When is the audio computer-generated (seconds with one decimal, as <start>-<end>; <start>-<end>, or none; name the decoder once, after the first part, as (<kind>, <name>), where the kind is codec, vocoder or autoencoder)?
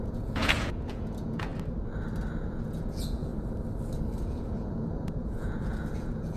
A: 0.0-1.5 (vocoder, Vocos); 2.3-3.3; 4.2-6.4